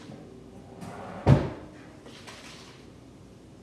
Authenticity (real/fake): real